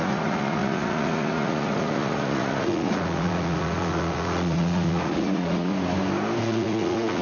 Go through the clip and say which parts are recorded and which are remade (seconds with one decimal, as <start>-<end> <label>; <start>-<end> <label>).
0.0-5.7 remade; 5.7-6.4 recorded; 6.4-7.2 remade